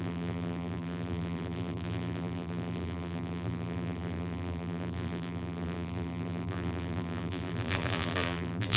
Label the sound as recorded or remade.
remade